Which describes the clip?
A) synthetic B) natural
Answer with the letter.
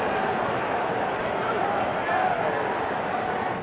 B